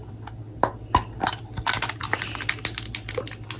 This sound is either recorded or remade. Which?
recorded